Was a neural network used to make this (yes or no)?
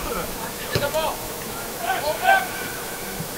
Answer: yes